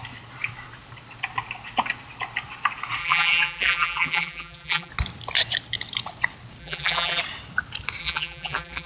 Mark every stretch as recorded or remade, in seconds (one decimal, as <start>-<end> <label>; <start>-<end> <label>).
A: 0.0-3.0 recorded; 3.0-4.9 remade; 4.9-6.6 recorded; 6.6-7.2 remade; 7.2-8.0 recorded; 8.0-8.9 remade

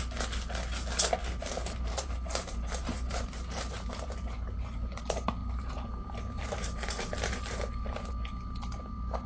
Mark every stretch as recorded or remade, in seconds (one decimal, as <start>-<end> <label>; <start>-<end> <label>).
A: 0.0-1.2 recorded; 1.2-5.0 remade; 5.0-5.4 recorded; 5.4-8.1 remade; 8.1-9.3 recorded

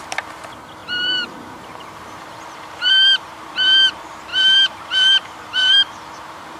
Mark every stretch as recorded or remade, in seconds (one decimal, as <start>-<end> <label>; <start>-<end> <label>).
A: 0.0-0.8 recorded; 0.8-3.5 remade; 3.5-4.3 recorded; 4.3-6.6 remade

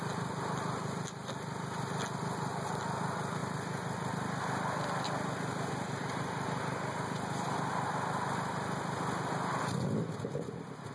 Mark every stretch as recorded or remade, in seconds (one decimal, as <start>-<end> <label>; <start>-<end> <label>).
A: 0.0-10.9 recorded

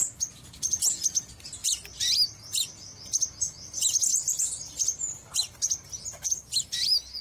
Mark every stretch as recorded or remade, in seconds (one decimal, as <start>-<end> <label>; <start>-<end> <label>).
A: 0.0-4.1 recorded; 4.1-6.3 remade; 6.3-7.2 recorded

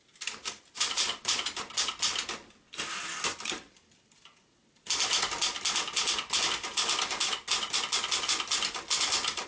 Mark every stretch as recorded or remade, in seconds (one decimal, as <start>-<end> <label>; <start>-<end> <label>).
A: 0.0-0.4 recorded; 0.4-1.7 remade; 1.7-9.5 recorded